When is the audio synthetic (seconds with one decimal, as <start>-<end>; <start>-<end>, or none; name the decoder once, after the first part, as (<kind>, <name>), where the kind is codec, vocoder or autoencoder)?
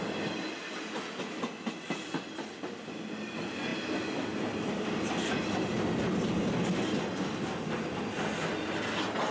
none